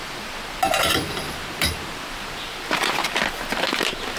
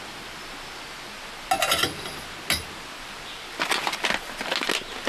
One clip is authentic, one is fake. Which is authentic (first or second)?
second